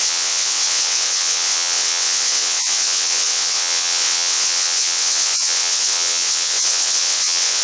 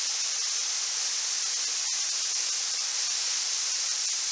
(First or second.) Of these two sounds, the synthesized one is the first